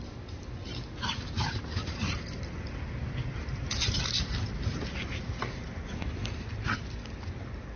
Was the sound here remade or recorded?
recorded